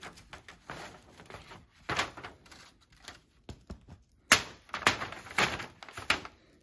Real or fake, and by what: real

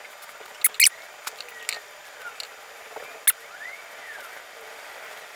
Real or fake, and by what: real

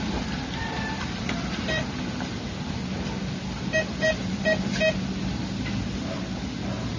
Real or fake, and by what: real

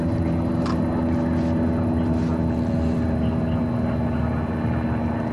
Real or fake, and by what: real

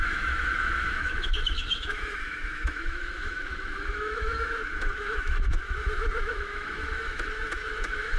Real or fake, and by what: fake, autoencoder, DAC-VAE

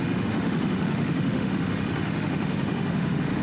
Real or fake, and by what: fake, autoencoder, DAC-VAE